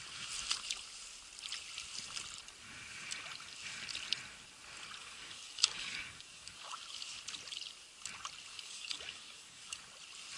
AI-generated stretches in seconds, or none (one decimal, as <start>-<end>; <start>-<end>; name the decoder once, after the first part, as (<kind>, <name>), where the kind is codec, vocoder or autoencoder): 5.0-6.8 (codec, DAC); 8.5-9.8